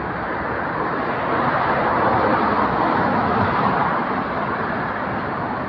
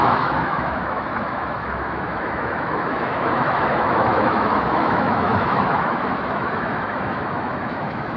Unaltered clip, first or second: first